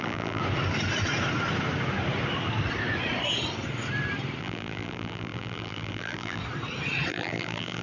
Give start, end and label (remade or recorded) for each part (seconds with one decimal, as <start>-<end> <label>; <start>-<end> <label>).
0.0-0.4 remade; 0.4-4.4 recorded; 4.4-6.4 remade; 6.4-7.1 recorded; 7.1-7.8 remade